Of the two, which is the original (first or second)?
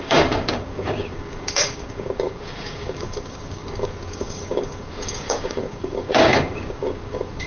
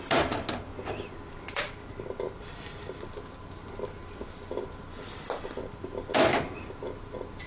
second